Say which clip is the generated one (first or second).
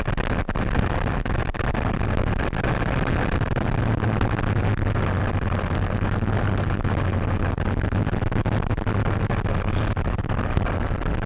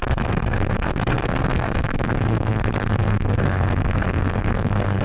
second